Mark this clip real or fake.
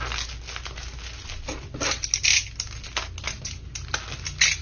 real